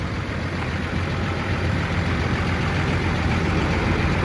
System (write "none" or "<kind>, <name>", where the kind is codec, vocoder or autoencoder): vocoder, BigVGAN v2